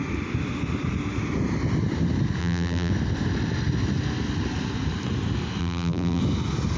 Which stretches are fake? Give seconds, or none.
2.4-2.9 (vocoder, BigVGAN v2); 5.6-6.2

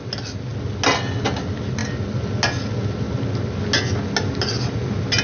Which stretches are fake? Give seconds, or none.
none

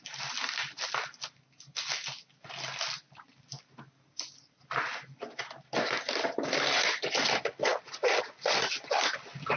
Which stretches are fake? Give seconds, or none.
none

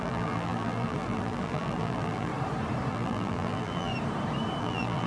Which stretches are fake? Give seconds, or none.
0.0-2.3 (vocoder, BigVGAN v2); 2.9-3.9; 4.6-5.1

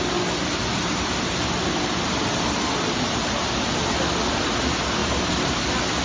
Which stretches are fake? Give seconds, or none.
0.7-3.4 (vocoder, BigVGAN v2); 5.0-5.5

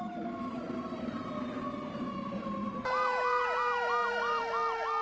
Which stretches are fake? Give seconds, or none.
2.6-4.4 (vocoder, BigVGAN v2)

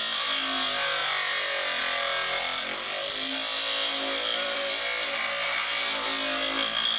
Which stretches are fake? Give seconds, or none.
4.3-4.8 (vocoder, BigVGAN v2)